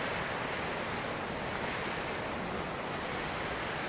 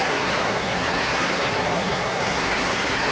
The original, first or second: first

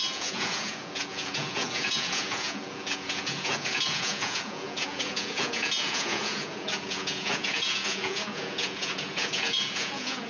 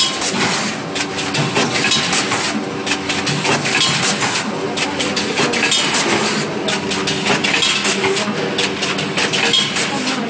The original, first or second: second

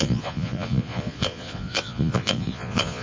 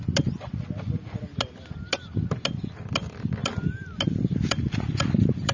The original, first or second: second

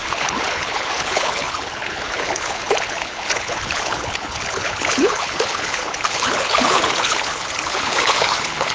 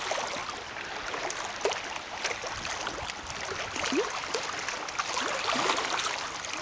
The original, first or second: second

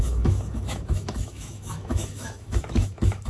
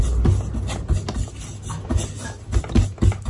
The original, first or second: second